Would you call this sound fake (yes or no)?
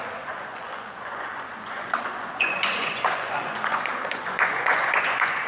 yes